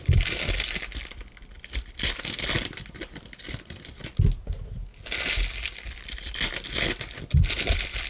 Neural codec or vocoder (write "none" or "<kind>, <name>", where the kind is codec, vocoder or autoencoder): none